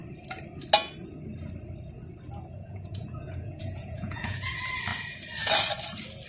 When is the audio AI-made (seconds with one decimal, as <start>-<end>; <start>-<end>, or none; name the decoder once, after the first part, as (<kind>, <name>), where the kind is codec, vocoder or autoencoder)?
2.5-4.5 (vocoder, Vocos)